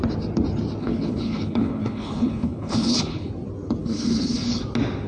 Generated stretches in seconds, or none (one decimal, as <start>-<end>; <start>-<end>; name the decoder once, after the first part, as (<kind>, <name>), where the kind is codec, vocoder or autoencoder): 0.8-3.3 (codec, HILCodec); 3.8-4.6